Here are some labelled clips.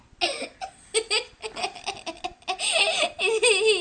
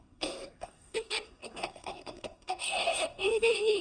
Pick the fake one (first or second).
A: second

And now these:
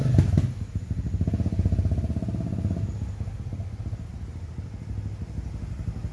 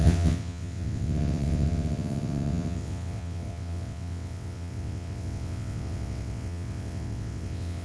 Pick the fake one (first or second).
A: second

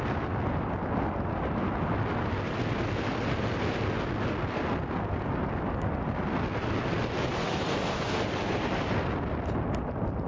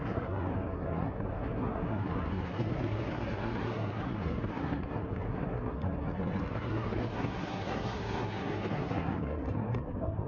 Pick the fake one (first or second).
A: second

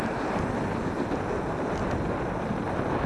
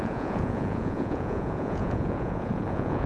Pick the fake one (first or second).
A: second